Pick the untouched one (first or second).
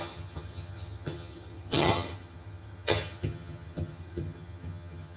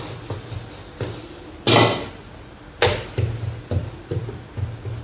second